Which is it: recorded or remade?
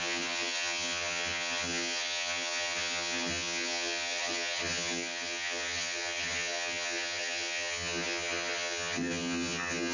remade